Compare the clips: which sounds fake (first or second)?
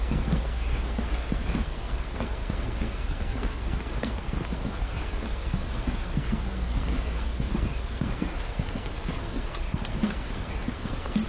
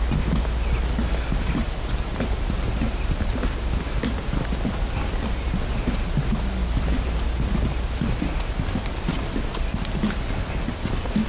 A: first